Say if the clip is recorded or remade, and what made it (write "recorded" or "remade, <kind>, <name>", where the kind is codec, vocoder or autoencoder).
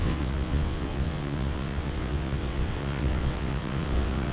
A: remade, vocoder, WaveNeXt